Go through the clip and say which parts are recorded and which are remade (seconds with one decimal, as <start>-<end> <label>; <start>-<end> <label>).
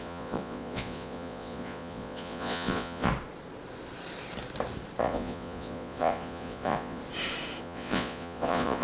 0.0-3.1 remade; 3.1-5.0 recorded; 5.0-7.0 remade; 7.0-7.6 recorded; 7.6-8.8 remade